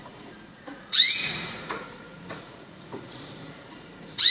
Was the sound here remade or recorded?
remade